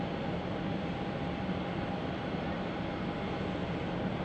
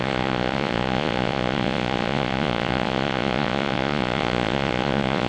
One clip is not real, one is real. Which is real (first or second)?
first